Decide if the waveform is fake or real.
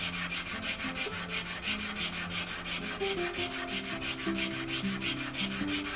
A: real